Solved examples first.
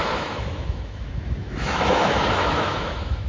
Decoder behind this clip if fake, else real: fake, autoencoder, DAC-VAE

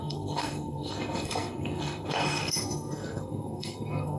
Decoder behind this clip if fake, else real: fake, codec, SNAC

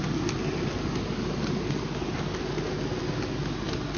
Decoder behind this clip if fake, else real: real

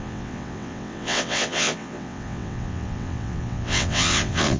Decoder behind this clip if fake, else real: fake, vocoder, WaveNeXt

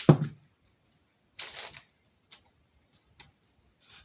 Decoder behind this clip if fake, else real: real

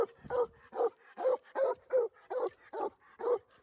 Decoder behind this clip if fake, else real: real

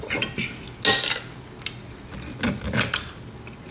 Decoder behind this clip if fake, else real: real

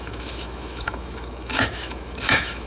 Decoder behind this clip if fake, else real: fake, autoencoder, DAC-VAE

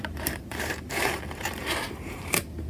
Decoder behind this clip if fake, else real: fake, vocoder, BigVGAN v2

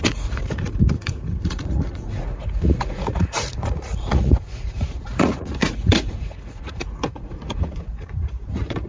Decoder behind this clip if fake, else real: fake, vocoder, Vocos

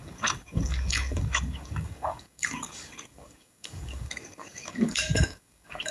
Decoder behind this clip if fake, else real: fake, codec, DAC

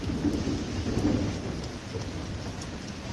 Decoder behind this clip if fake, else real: real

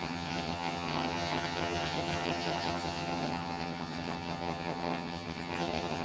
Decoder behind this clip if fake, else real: fake, vocoder, HiFi-GAN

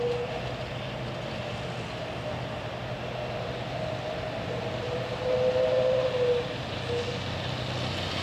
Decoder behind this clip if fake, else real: real